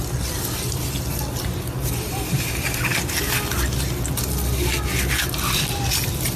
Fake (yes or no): no